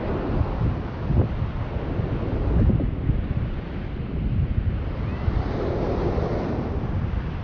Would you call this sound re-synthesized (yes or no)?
no